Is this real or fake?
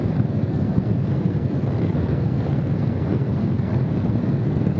fake